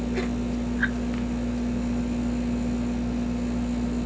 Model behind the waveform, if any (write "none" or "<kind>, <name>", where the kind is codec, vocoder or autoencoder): none